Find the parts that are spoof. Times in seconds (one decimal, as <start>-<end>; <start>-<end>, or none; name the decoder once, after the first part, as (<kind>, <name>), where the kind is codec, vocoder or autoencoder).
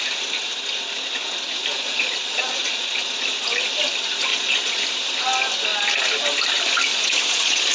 1.7-2.9 (vocoder, Vocos); 4.3-4.8; 6.9-7.7